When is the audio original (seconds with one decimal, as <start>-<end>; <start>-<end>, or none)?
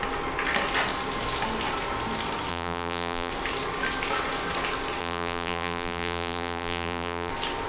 0.0-2.5; 3.3-5.0; 7.3-7.7